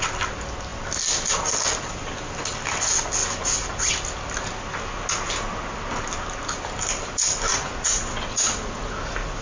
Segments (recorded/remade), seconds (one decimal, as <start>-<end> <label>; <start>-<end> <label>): 0.0-7.5 recorded; 7.5-8.8 remade; 8.8-9.4 recorded